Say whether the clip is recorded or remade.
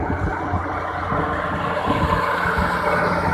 recorded